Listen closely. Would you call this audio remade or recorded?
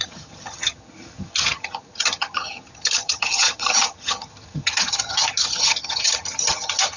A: remade